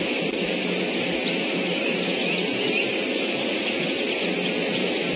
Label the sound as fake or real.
fake